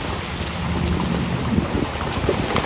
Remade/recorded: recorded